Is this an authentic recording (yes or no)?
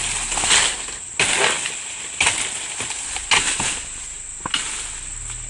yes